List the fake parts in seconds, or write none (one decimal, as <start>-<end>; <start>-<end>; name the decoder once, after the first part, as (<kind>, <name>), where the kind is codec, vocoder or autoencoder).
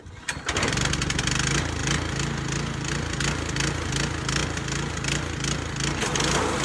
none